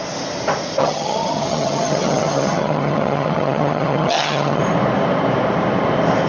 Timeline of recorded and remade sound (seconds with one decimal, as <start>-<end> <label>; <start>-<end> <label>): 0.0-0.8 recorded; 0.8-4.6 remade; 4.6-6.3 recorded